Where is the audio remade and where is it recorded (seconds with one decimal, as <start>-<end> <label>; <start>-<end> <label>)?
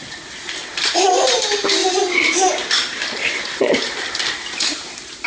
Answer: 0.0-5.3 recorded